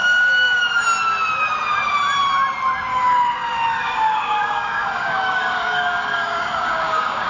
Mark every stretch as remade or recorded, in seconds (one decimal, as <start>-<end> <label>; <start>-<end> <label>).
0.0-0.6 remade; 0.6-2.9 recorded; 2.9-7.3 remade